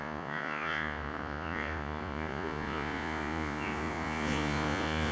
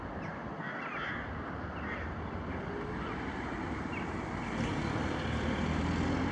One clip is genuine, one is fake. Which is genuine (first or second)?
second